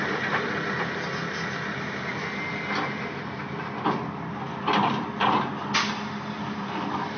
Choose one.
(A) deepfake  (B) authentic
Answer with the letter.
B